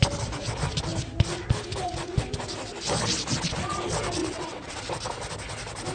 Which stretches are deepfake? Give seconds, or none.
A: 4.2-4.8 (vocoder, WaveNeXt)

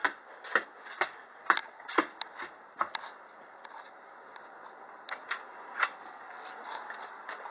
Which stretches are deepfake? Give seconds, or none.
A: none